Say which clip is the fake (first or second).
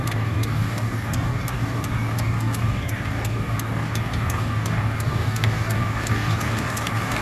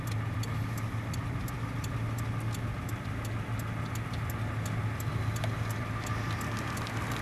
first